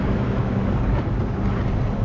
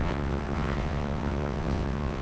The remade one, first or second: second